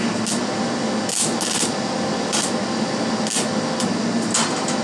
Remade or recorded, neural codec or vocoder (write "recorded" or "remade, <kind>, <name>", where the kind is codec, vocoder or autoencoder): recorded